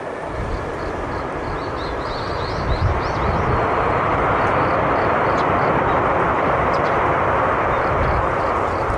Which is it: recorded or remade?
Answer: remade